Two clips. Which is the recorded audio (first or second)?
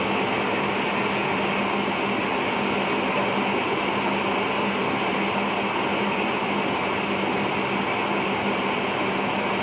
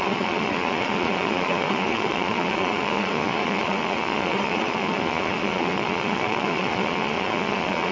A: first